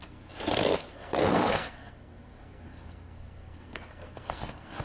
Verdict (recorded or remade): remade